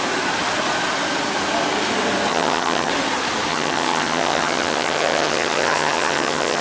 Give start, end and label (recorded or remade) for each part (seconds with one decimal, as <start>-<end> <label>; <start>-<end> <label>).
0.0-2.3 recorded; 2.3-2.9 remade; 2.9-3.5 recorded; 3.5-6.6 remade